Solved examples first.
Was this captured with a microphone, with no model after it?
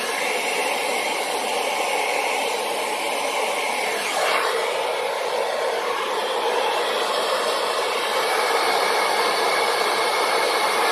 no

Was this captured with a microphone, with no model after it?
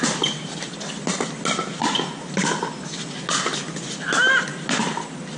yes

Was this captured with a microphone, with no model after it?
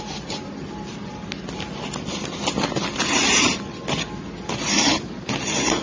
yes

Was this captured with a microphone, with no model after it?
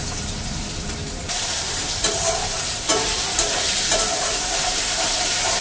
no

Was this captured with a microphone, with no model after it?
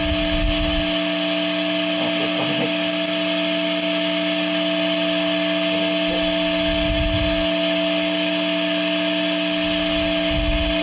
yes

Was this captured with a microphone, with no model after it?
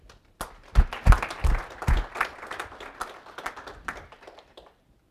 yes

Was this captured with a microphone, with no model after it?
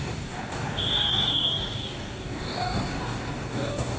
no